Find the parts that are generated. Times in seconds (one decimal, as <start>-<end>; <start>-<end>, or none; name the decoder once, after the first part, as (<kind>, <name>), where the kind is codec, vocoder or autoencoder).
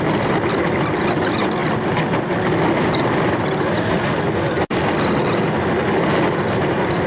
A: none